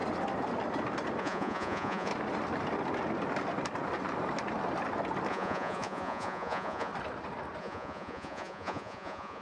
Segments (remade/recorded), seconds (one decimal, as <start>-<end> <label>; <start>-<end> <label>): 0.0-1.2 recorded; 1.2-2.1 remade; 2.1-5.3 recorded; 5.3-6.9 remade; 6.9-7.6 recorded; 7.6-9.4 remade